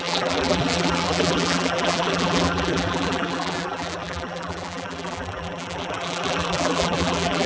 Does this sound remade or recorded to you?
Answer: remade